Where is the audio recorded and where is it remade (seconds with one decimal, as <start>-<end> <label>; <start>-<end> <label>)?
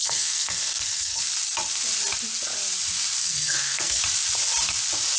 0.0-1.2 remade; 1.2-3.2 recorded; 3.2-4.0 remade; 4.0-5.2 recorded